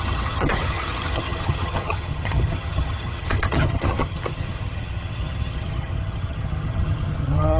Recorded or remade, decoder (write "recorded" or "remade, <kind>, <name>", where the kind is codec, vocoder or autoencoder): remade, vocoder, HiFi-GAN